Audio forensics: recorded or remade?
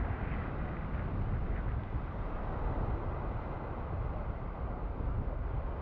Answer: recorded